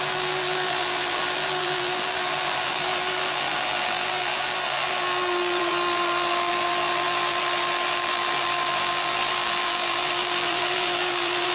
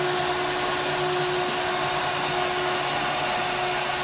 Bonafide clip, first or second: second